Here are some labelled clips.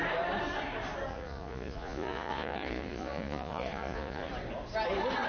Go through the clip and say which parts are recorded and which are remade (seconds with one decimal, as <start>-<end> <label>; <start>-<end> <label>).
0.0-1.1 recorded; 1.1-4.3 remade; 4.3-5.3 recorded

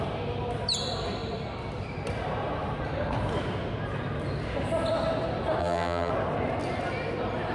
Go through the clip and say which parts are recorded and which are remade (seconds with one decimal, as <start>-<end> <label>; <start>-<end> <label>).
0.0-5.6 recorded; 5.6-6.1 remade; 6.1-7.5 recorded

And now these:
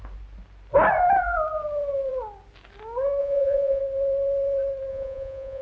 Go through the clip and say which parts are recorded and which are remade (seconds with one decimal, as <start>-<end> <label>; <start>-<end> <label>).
0.0-3.2 recorded; 3.2-3.8 remade; 3.8-4.9 recorded; 4.9-5.6 remade

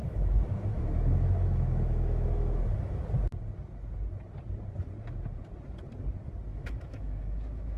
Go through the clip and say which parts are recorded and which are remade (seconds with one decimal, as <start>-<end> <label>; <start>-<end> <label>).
0.0-3.0 remade; 3.0-6.5 recorded; 6.5-7.8 remade

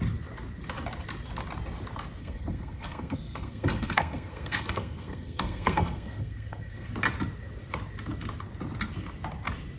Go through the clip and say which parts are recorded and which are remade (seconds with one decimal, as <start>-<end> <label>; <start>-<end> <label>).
0.0-2.2 recorded; 2.2-6.9 remade; 6.9-9.8 recorded

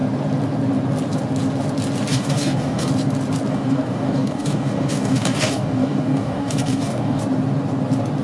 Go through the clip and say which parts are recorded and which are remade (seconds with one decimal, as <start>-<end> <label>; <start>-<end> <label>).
0.0-2.1 recorded; 2.1-2.9 remade; 2.9-3.5 recorded; 3.5-7.2 remade; 7.2-8.2 recorded